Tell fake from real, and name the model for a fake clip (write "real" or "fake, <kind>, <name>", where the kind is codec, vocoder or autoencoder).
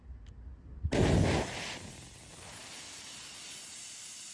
real